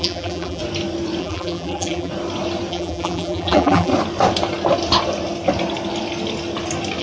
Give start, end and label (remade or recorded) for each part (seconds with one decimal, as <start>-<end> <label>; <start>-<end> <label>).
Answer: 0.0-0.6 remade; 0.6-1.2 recorded; 1.2-2.1 remade; 2.1-2.7 recorded; 2.7-3.9 remade; 3.9-7.0 recorded